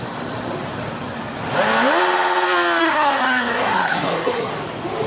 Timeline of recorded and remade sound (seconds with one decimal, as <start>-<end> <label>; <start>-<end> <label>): 0.0-2.8 recorded; 2.8-4.5 remade; 4.5-5.1 recorded